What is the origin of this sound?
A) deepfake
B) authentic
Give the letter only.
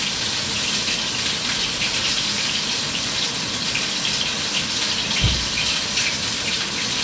B